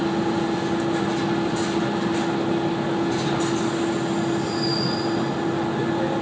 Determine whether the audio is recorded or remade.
recorded